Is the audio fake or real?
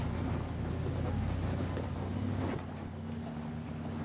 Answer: real